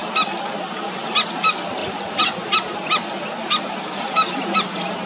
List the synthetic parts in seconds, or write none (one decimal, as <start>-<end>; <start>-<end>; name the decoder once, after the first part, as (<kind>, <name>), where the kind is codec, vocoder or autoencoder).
none